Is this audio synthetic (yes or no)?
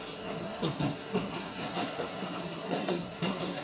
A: yes